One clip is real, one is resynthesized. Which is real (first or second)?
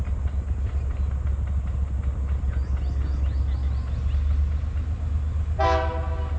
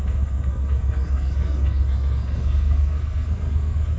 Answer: first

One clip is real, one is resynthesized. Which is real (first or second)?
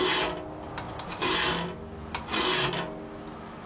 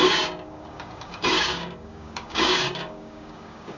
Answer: first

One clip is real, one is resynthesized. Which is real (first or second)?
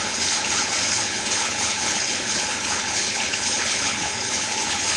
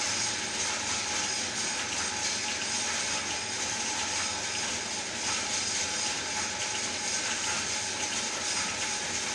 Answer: second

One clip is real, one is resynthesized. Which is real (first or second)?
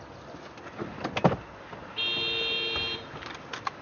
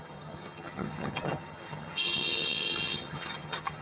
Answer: first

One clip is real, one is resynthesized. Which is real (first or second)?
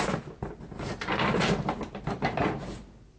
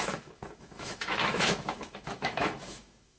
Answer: first